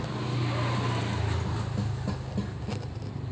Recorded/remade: recorded